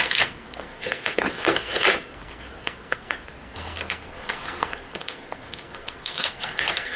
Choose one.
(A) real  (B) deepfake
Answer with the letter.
B